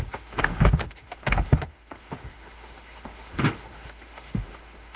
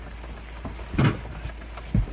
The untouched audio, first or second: second